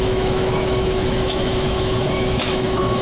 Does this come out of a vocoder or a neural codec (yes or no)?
yes